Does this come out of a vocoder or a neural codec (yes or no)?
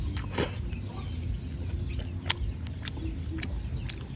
no